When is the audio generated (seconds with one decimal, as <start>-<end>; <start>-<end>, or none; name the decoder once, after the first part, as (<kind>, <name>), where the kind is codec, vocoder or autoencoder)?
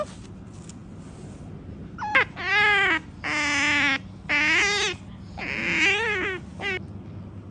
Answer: none